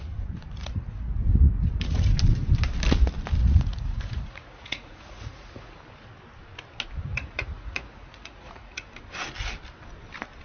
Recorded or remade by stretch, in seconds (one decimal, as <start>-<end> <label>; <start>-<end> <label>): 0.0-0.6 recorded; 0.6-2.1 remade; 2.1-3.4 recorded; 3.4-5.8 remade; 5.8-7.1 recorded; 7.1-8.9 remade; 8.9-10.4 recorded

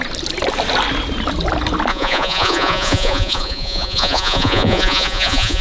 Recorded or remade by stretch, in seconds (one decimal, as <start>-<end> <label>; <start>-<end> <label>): 0.0-1.9 recorded; 1.9-5.6 remade

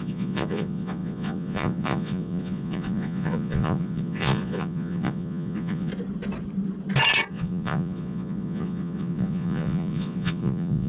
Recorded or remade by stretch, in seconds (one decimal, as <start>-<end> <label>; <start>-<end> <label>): 0.0-5.9 remade; 5.9-7.3 recorded; 7.3-10.9 remade

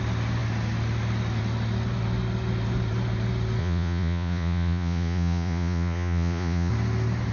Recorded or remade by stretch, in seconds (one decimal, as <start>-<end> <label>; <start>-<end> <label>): 0.0-3.6 recorded; 3.6-6.7 remade; 6.7-7.3 recorded

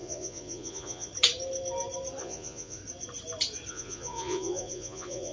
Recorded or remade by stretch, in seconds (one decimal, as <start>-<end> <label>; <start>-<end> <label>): 0.0-1.1 remade; 1.1-2.2 recorded; 2.2-2.8 remade; 2.8-3.7 recorded; 3.7-5.3 remade

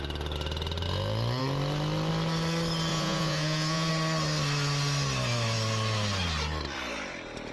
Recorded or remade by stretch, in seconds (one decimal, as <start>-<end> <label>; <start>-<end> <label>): 0.0-2.9 recorded; 2.9-3.9 remade; 3.9-7.5 recorded

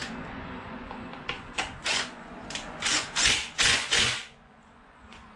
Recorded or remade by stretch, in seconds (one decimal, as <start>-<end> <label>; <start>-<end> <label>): 0.0-5.4 remade